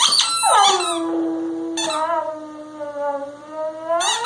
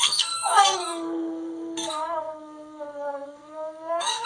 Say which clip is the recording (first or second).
first